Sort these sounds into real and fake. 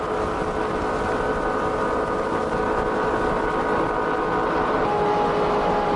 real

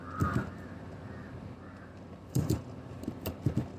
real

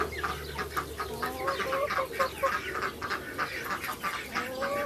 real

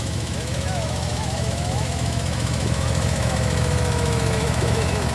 fake